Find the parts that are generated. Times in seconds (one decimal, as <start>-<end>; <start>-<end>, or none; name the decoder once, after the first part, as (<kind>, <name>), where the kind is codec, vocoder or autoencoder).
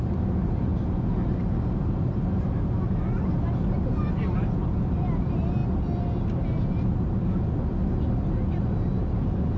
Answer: none